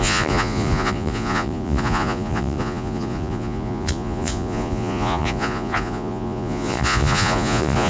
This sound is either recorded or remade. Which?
remade